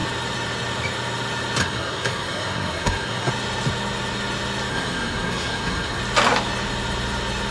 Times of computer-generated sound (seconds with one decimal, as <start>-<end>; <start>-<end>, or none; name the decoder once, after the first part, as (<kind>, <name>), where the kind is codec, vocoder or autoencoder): 1.6-3.3 (codec, SNAC); 4.7-6.0